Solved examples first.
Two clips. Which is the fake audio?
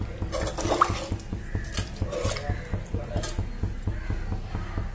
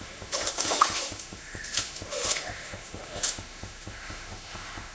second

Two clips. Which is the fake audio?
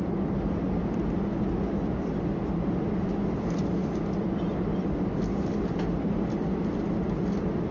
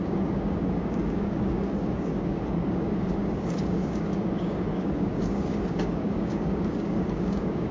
second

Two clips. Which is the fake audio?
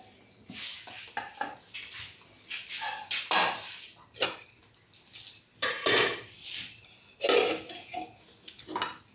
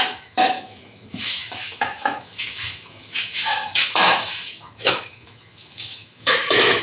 second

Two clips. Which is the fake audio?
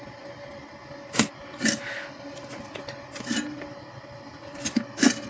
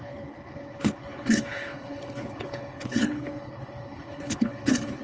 second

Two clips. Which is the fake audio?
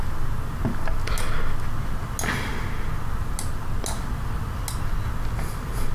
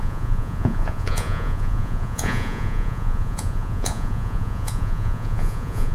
second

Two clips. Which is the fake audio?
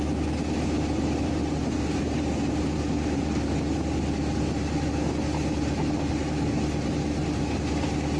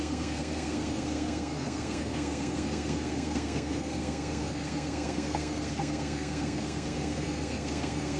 second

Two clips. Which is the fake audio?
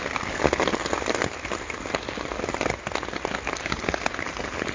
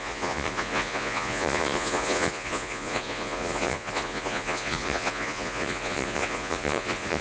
second